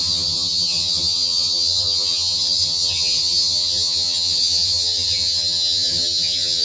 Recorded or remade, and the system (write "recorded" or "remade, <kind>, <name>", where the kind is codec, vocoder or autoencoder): remade, vocoder, HiFi-GAN